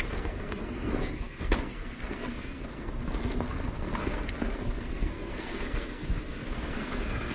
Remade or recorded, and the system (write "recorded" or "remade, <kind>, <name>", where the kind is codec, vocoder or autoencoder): remade, codec, SNAC